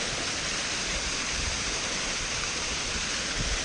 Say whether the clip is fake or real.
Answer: fake